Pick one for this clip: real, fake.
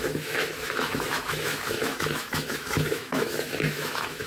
fake